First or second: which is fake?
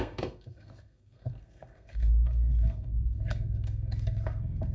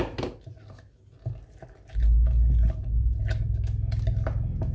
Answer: first